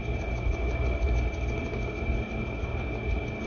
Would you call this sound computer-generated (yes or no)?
no